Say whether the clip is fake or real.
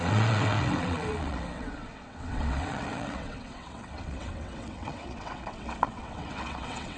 fake